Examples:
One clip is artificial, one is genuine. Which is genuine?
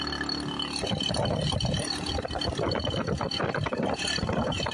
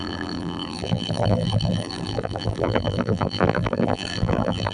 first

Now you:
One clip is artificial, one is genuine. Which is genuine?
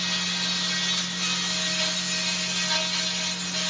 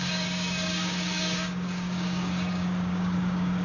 first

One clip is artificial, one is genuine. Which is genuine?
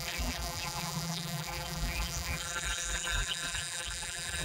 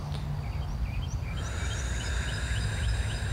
second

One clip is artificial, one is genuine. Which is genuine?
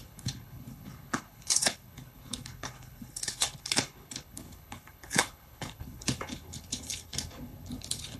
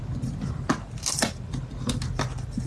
second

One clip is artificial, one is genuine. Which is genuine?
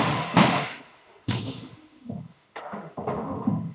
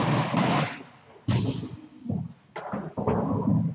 second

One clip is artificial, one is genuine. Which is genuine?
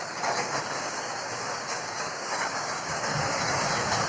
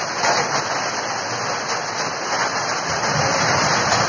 second